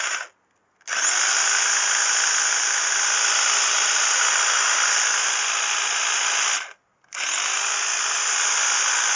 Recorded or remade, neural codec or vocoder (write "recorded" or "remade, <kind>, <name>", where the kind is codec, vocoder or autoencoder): recorded